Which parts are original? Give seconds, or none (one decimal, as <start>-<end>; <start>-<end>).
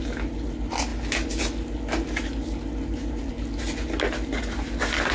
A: 0.0-5.1